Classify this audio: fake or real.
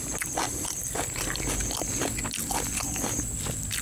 real